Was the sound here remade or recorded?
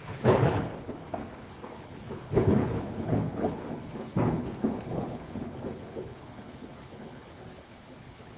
remade